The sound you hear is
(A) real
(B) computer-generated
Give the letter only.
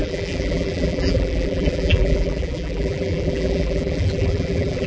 B